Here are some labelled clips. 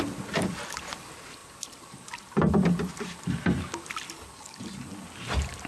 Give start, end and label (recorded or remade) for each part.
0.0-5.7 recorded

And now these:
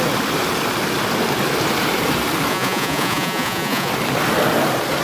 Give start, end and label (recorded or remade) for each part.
0.0-2.5 recorded; 2.5-3.9 remade; 3.9-5.0 recorded

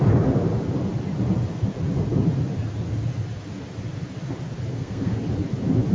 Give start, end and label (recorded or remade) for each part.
0.0-4.7 recorded; 4.7-5.2 remade; 5.2-5.9 recorded

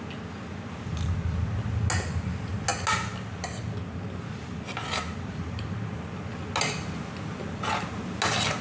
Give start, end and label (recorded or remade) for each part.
0.0-8.6 recorded

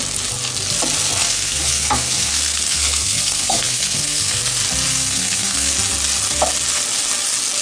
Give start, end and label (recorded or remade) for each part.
0.0-1.2 recorded; 1.2-4.4 remade; 4.4-4.9 recorded; 4.9-5.7 remade; 5.7-7.6 recorded

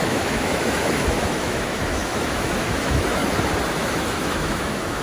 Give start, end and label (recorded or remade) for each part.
0.0-3.2 remade; 3.2-3.7 recorded; 3.7-5.0 remade

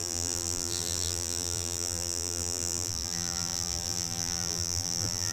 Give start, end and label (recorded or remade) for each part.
0.0-5.3 remade

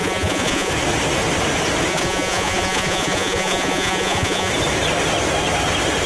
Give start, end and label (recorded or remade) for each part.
0.0-0.7 remade; 0.7-1.9 recorded; 1.9-4.5 remade; 4.5-6.1 recorded